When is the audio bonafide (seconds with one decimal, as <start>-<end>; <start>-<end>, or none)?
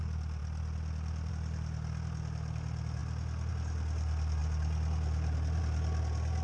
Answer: 0.0-6.4